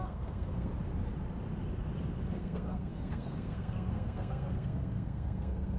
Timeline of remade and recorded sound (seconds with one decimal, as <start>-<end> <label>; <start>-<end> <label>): 0.0-0.7 remade; 0.7-2.3 recorded; 2.3-5.8 remade